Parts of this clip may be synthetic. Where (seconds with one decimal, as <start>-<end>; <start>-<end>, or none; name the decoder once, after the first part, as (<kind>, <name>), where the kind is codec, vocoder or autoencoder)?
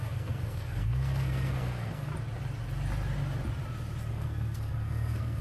0.0-2.1 (codec, SNAC); 4.1-5.4